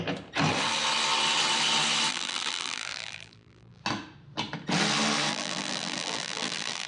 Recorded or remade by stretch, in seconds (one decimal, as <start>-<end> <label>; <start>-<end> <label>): 0.0-2.1 recorded; 2.1-3.8 remade; 3.8-5.3 recorded; 5.3-6.9 remade